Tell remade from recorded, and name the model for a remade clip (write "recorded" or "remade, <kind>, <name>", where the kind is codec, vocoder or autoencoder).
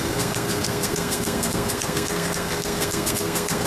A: remade, codec, SNAC